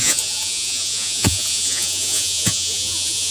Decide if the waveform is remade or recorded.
remade